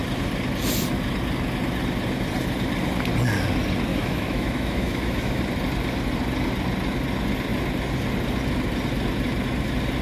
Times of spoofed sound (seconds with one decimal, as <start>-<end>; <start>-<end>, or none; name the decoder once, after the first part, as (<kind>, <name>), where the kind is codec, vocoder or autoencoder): 3.9-5.4 (autoencoder, DAC-VAE)